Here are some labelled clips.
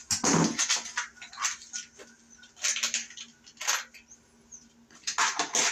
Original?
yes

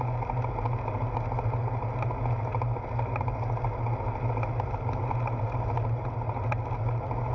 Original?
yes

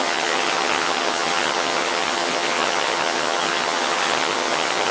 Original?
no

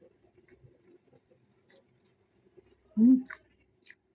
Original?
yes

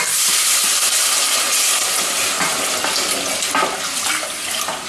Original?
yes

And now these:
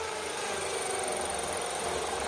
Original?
yes